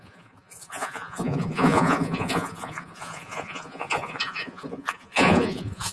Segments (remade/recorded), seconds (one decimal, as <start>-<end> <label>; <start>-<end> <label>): 0.0-5.9 remade